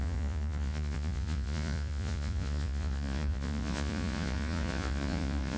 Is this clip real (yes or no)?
no